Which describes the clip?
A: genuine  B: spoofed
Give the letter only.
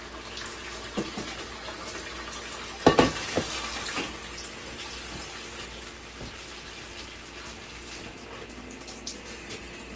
A